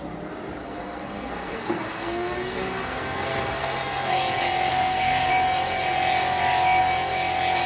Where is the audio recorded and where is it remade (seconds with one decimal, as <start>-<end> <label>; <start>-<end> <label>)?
0.0-0.6 recorded; 0.6-4.2 remade; 4.2-4.7 recorded; 4.7-5.3 remade; 5.3-7.7 recorded

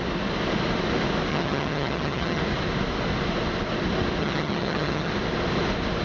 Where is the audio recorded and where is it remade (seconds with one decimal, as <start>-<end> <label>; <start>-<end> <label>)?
0.0-1.3 recorded; 1.3-2.4 remade; 2.4-4.2 recorded; 4.2-5.1 remade; 5.1-6.0 recorded

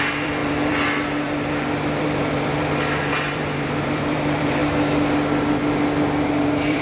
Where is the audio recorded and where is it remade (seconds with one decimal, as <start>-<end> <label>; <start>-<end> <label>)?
0.0-4.6 remade; 4.6-6.3 recorded; 6.3-6.8 remade

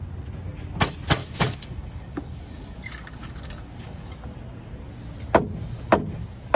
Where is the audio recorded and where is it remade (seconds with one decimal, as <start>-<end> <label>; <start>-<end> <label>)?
0.0-1.2 recorded; 1.2-4.1 remade; 4.1-6.6 recorded

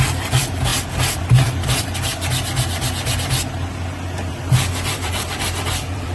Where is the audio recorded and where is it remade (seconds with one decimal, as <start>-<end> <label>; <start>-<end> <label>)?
0.0-0.7 remade; 0.7-1.2 recorded; 1.2-2.1 remade; 2.1-4.3 recorded; 4.3-6.1 remade